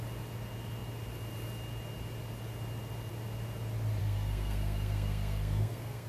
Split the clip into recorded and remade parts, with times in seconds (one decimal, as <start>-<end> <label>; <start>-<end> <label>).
0.0-4.0 recorded; 4.0-6.1 remade